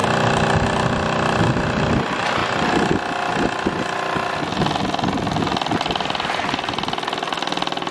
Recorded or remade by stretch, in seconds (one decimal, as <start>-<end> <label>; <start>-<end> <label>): 0.0-7.9 recorded